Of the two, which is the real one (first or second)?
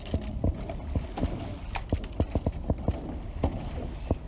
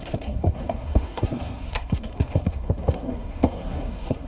first